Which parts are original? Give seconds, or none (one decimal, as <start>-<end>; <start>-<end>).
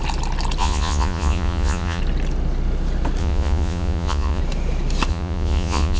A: 0.0-0.6; 2.0-3.2; 4.4-5.1